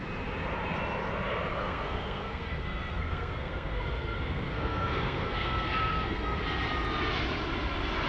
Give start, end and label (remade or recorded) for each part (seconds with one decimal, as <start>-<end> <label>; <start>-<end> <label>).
0.0-1.6 recorded; 1.6-6.4 remade; 6.4-8.1 recorded